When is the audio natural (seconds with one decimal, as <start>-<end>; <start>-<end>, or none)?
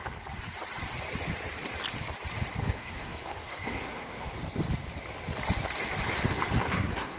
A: 0.0-2.6; 4.3-6.6